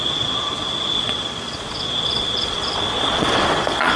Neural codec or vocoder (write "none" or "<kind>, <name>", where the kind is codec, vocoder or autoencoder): vocoder, Vocos